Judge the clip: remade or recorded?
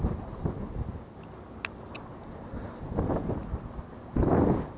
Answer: recorded